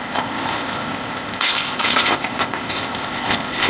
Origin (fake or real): fake